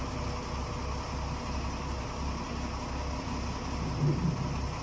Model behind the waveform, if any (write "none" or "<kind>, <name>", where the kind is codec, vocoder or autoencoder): none